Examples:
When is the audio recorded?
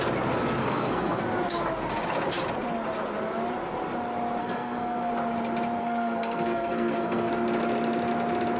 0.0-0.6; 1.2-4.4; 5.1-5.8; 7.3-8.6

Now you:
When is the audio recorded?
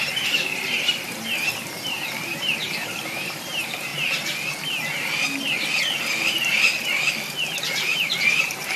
3.9-7.6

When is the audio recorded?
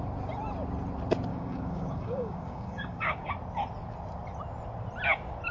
0.0-1.3; 3.3-5.5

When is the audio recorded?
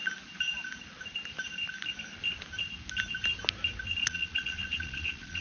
0.0-4.0